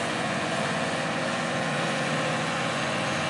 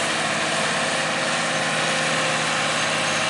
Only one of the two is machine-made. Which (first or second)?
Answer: first